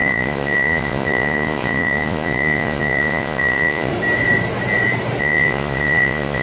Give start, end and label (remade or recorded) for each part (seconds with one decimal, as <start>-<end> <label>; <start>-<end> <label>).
0.0-3.9 remade; 3.9-5.2 recorded; 5.2-6.4 remade